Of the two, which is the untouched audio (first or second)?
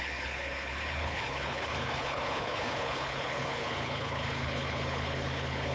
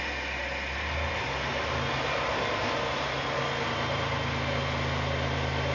second